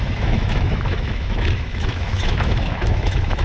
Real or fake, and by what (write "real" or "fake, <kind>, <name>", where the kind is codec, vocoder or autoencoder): fake, autoencoder, DAC-VAE